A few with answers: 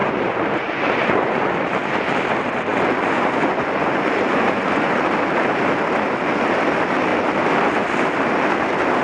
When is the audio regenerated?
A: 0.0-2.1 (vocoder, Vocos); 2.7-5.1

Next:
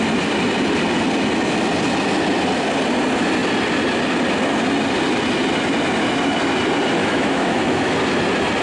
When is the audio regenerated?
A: 7.0-7.9 (autoencoder, DAC-VAE)